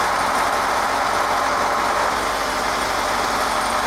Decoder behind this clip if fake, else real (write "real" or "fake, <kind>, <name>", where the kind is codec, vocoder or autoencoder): real